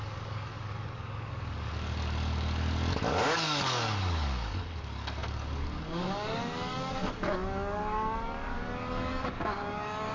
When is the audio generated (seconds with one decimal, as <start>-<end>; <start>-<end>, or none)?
0.0-10.1